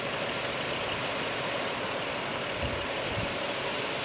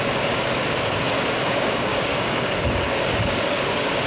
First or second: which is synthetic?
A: second